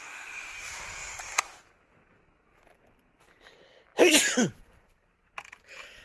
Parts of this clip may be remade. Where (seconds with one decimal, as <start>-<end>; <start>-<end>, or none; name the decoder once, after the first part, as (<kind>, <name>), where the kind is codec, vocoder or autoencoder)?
1.0-1.7 (vocoder, BigVGAN v2)